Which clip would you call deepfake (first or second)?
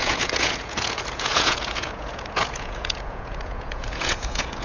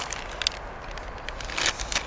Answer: first